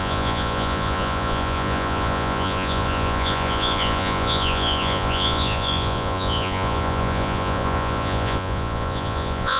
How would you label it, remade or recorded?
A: remade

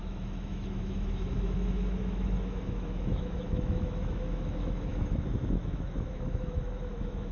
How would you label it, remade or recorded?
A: remade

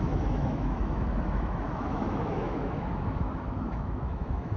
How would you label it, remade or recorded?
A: remade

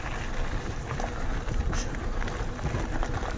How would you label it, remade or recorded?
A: recorded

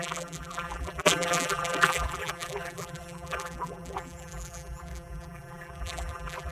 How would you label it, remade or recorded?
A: remade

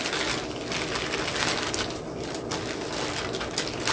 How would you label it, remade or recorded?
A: recorded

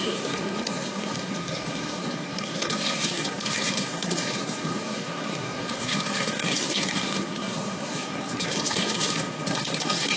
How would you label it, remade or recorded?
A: remade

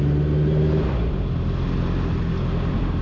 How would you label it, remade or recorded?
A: recorded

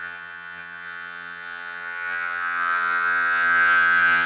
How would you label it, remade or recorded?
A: remade